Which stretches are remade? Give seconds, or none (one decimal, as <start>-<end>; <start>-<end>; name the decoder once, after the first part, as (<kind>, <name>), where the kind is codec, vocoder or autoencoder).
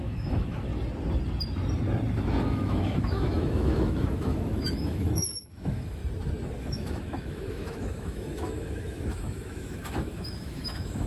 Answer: 0.0-0.7 (autoencoder, DAC-VAE); 2.4-6.0; 6.6-11.1